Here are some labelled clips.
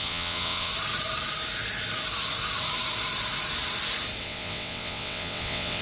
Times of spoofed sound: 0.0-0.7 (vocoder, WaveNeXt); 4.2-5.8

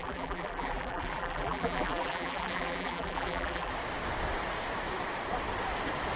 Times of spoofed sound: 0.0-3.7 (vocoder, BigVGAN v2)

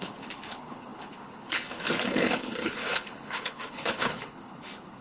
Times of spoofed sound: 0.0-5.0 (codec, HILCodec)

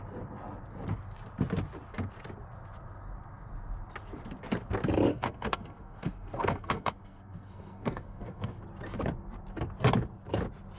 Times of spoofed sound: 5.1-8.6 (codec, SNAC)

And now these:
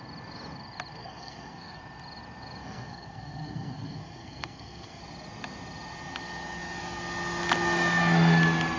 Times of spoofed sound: 1.0-1.8 (codec, SNAC); 2.6-5.0

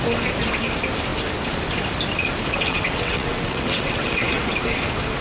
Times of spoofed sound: 2.7-4.4 (vocoder, WaveNeXt)